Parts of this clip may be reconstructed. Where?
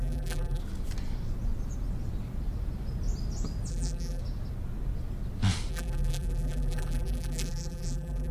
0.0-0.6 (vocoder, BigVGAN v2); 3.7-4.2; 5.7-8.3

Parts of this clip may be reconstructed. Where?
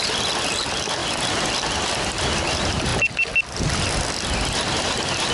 none